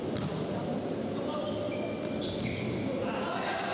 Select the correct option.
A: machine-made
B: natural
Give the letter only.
B